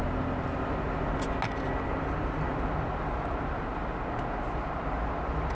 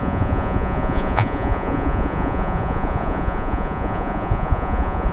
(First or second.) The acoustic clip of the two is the first